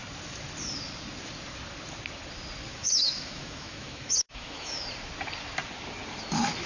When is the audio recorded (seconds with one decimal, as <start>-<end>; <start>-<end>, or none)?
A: 0.0-2.7; 4.9-6.7